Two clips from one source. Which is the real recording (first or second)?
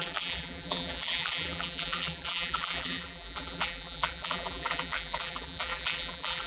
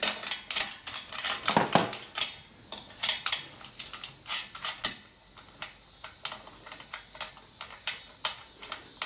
second